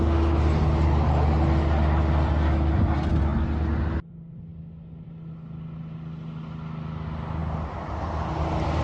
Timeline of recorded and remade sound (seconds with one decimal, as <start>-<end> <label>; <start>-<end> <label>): 0.0-8.8 recorded